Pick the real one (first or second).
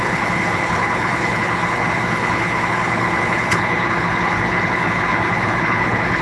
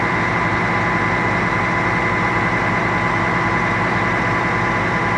second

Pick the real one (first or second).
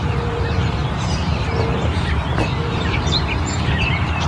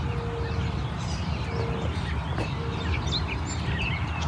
second